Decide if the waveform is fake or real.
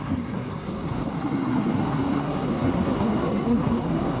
fake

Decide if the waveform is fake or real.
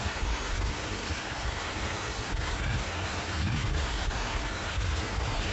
fake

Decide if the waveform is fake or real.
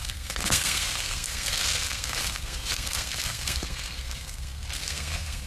fake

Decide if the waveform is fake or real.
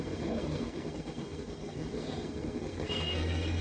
fake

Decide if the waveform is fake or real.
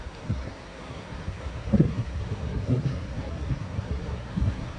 fake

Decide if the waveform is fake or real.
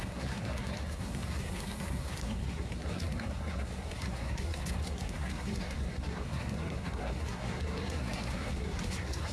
fake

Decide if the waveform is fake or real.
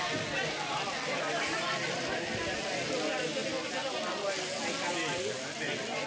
real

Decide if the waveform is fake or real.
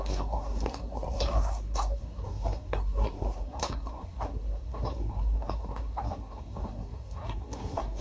fake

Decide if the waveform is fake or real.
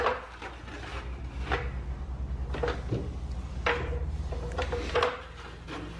real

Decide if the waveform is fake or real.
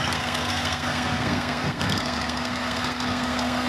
fake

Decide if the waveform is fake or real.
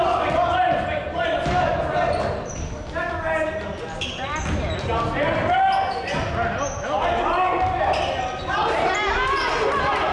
real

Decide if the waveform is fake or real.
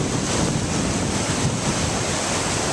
real